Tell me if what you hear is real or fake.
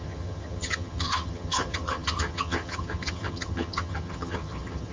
fake